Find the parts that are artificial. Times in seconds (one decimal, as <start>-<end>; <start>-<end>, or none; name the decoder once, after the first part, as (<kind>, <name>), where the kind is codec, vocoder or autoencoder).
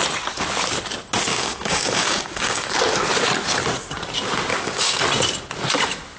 1.3-2.7 (codec, DAC); 4.5-5.0